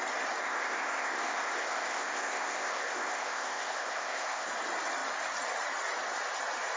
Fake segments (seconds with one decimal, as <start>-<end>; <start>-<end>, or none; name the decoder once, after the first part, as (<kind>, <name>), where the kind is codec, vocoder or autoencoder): 0.4-4.5 (codec, ZipCodec)

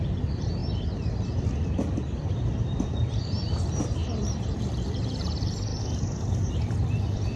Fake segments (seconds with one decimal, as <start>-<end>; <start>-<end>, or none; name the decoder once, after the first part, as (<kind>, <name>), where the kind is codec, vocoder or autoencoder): 0.0-0.6 (vocoder, BigVGAN v2); 2.2-5.7; 6.5-7.4

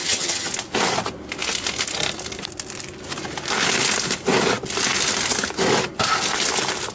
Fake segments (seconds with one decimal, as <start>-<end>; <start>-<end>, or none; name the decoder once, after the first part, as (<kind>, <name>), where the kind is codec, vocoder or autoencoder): 0.0-0.5 (vocoder, HiFi-GAN)

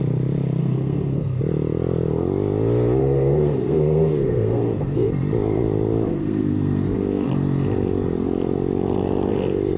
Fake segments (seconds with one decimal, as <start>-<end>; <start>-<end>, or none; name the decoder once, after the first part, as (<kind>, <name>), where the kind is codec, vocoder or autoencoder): 0.6-1.4 (codec, SNAC); 3.0-5.1; 6.1-7.3

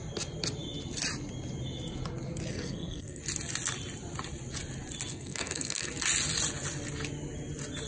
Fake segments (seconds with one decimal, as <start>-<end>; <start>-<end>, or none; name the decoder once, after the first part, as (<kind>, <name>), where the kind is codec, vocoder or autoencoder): 2.5-3.2 (codec, SNAC); 5.1-5.9